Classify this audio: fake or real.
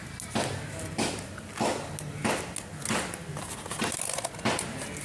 real